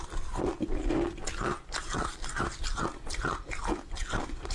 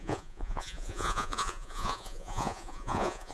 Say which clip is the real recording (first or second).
first